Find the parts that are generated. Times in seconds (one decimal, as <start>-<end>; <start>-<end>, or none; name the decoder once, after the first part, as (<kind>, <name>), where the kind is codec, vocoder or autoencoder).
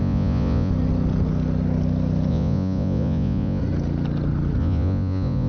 0.0-0.7 (vocoder, Vocos); 2.3-3.6; 4.6-5.5